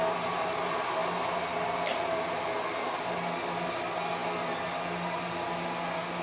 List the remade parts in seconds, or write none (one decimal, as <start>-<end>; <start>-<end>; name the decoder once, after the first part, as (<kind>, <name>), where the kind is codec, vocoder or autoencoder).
none